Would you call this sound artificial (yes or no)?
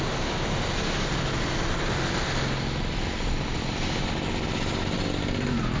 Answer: no